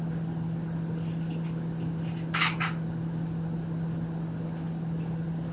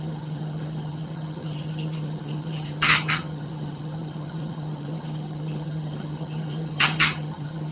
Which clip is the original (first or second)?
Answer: first